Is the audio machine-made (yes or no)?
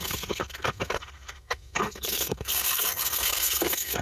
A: yes